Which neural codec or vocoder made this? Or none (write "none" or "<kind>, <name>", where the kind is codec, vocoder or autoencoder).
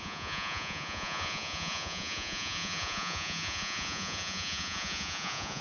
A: vocoder, Vocos